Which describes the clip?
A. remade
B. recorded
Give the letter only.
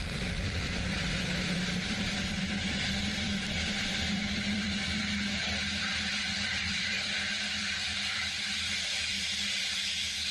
A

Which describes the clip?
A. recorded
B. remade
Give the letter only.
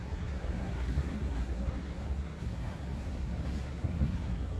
B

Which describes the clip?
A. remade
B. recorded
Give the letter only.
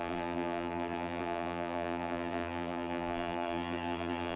A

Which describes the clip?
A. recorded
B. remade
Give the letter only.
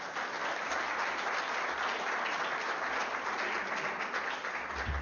A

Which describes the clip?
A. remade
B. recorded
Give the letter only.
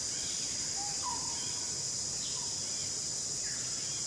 B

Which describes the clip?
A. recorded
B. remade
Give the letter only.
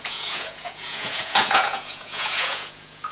B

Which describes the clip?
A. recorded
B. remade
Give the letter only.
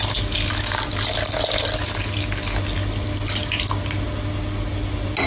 A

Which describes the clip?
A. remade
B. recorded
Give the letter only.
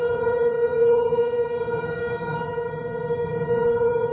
A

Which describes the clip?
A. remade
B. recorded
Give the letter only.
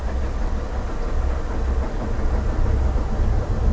B